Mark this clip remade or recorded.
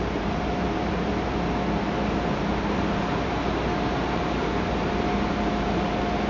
remade